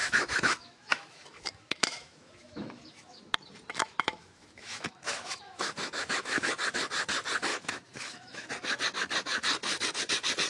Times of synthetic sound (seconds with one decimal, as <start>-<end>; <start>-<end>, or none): 0.0-3.2; 3.7-6.5; 7.5-8.5